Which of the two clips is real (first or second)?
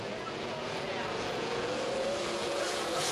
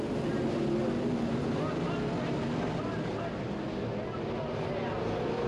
second